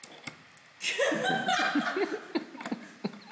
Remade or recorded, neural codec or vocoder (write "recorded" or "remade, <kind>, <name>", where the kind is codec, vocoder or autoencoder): recorded